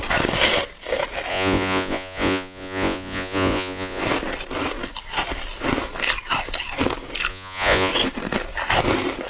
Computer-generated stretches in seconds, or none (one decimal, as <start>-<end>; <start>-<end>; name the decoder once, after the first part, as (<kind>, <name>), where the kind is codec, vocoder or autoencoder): 1.3-4.0 (vocoder, Vocos); 7.3-7.9